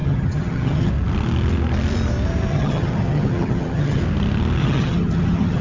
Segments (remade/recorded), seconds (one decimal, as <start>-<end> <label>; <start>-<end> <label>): 0.0-0.9 remade; 0.9-2.5 recorded; 2.5-4.0 remade; 4.0-4.6 recorded; 4.6-5.6 remade